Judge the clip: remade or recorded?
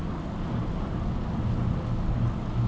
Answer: recorded